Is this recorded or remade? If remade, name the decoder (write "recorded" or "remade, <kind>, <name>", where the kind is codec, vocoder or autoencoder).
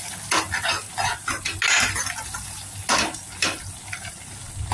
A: recorded